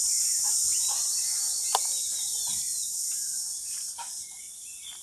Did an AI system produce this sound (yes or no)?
no